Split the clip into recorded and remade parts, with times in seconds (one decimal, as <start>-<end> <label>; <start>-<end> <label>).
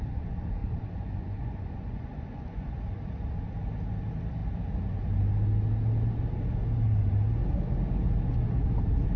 0.0-0.6 recorded; 0.6-2.7 remade; 2.7-9.2 recorded